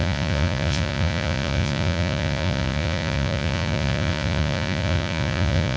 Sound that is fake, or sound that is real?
fake